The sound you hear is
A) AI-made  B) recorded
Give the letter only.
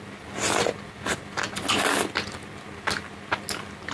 B